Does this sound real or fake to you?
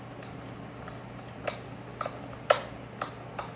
real